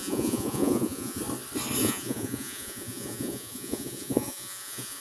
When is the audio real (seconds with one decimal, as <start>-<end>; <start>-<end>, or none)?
1.2-1.8

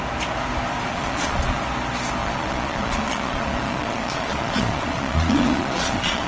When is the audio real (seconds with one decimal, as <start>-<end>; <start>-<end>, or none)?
0.0-0.9; 1.6-2.2

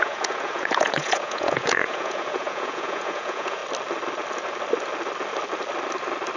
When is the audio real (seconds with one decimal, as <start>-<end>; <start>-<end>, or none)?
3.6-6.4

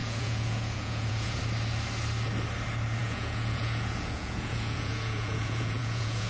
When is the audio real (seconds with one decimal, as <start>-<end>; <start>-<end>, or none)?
1.4-3.0

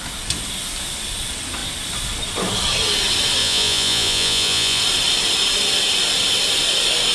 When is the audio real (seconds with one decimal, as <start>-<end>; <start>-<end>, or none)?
0.0-3.4; 4.8-7.1

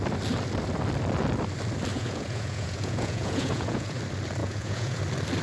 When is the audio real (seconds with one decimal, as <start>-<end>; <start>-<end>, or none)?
0.0-1.9; 4.0-4.4; 5.0-5.4

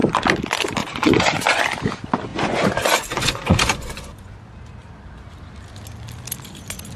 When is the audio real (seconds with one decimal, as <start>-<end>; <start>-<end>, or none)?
0.0-0.8; 1.6-2.3; 4.4-7.0

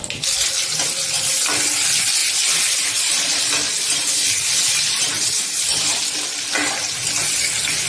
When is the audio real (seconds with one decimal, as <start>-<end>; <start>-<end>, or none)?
0.0-7.9